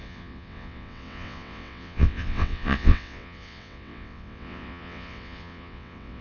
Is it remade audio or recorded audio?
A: remade